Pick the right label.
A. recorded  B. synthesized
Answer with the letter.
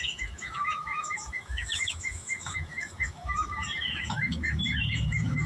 B